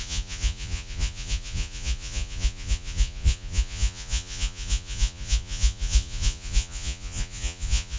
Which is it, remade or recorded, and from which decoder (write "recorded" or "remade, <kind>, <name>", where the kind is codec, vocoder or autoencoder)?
remade, vocoder, Vocos